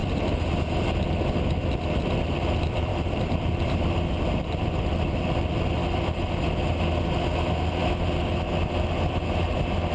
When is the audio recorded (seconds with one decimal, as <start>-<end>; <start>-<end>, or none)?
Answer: 0.0-2.9; 3.9-5.8; 6.8-9.9